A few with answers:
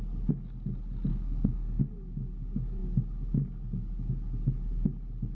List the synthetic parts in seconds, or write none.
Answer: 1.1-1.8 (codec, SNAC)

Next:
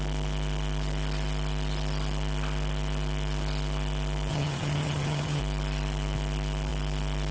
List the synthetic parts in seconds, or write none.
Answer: 4.3-5.4 (vocoder, HiFi-GAN)

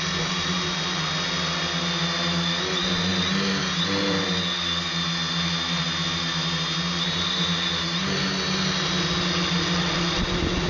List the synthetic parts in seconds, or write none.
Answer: none

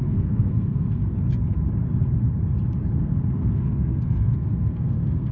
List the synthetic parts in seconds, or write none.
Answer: 0.0-1.0 (codec, SNAC); 2.9-5.3